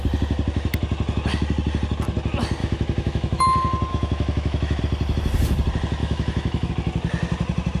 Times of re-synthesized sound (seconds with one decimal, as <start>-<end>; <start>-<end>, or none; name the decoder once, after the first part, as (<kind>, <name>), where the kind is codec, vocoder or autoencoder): 2.6-3.4 (autoencoder, DAC-VAE); 3.9-4.8; 6.0-6.7